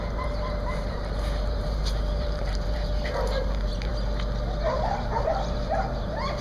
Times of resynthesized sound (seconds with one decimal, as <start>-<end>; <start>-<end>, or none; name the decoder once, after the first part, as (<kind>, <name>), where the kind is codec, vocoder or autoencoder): 0.0-3.9 (vocoder, BigVGAN v2); 4.7-6.4